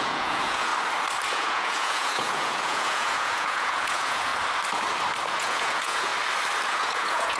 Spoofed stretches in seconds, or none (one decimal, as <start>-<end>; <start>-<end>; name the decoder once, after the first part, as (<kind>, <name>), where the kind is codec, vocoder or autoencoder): 0.0-0.7 (vocoder, Vocos); 1.3-4.3; 5.3-6.1; 6.7-7.4